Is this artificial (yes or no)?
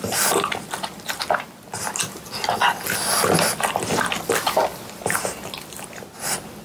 no